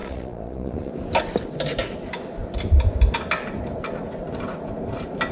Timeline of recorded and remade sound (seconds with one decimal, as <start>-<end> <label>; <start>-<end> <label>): 0.0-0.9 remade; 0.9-5.3 recorded